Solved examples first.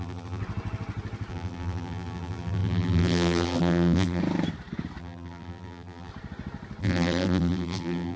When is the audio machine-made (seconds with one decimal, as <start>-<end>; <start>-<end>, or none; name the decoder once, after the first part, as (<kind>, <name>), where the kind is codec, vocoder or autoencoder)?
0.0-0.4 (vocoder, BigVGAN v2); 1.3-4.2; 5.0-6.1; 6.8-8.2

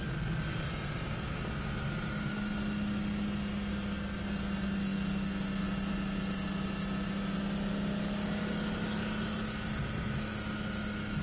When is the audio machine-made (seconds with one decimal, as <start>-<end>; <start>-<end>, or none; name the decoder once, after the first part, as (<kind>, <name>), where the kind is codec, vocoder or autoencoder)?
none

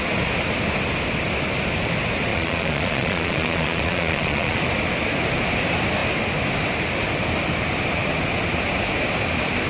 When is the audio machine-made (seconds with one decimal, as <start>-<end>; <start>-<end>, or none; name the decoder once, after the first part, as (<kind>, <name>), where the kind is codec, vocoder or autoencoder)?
2.3-4.6 (vocoder, Vocos)